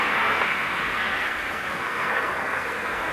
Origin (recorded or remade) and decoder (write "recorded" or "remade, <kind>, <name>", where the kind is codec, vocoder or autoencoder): remade, codec, SNAC